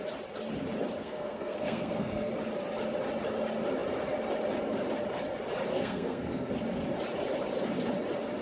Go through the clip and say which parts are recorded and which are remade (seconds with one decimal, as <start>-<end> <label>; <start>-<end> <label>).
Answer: 0.0-1.0 recorded; 1.0-2.3 remade; 2.3-5.7 recorded; 5.7-6.5 remade; 6.5-8.4 recorded